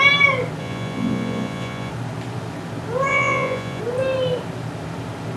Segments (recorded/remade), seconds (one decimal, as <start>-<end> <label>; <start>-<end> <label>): 0.0-0.6 recorded; 0.6-1.9 remade; 1.9-3.1 recorded; 3.1-3.8 remade; 3.8-5.4 recorded